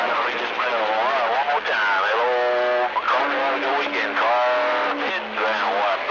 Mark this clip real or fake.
real